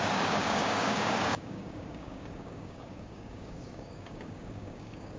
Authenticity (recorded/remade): remade